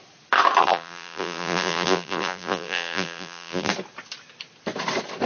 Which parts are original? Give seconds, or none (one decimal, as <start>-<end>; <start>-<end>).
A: 0.0-0.6; 3.7-5.3